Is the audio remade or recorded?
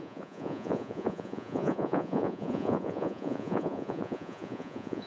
remade